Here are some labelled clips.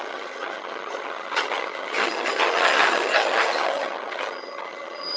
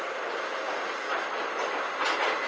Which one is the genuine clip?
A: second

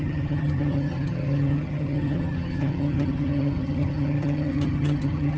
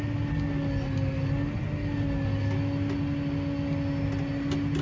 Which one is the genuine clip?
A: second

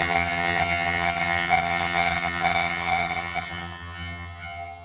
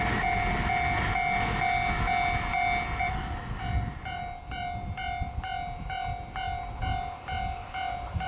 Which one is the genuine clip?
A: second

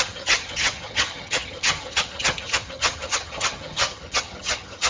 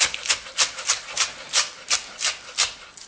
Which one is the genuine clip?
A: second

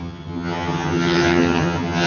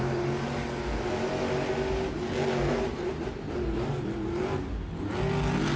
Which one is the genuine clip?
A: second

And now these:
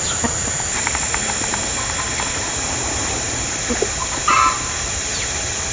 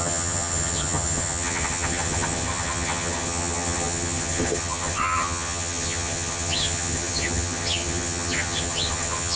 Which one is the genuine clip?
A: first